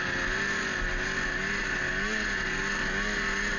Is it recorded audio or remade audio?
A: recorded